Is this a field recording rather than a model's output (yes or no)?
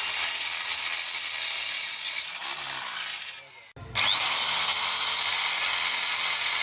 yes